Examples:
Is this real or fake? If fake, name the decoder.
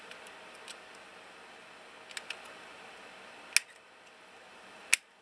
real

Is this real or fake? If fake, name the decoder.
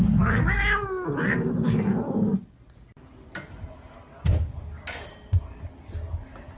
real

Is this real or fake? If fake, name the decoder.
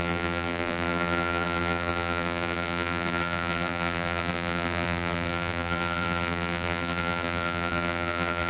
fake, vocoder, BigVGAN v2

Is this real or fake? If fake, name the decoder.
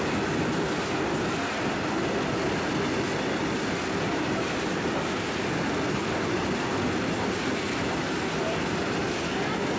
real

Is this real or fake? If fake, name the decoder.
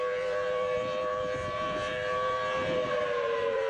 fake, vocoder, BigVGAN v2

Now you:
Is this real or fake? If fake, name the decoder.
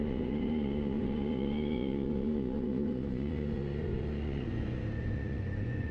fake, vocoder, Vocos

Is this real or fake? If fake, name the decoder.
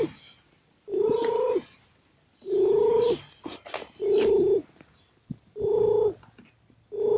real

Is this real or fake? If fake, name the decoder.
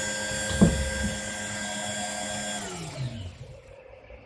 real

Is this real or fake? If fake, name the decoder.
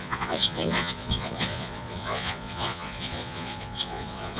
fake, vocoder, Vocos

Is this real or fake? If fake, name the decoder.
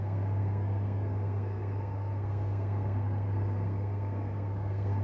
fake, codec, SNAC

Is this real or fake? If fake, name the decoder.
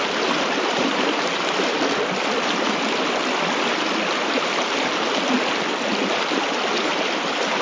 real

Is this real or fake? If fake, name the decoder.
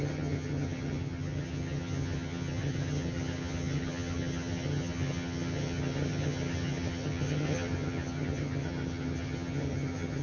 fake, vocoder, HiFi-GAN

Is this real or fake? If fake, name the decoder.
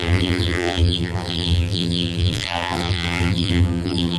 fake, vocoder, BigVGAN v2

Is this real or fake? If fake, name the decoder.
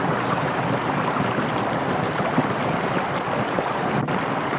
real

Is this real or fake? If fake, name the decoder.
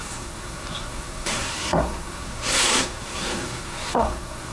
fake, codec, SNAC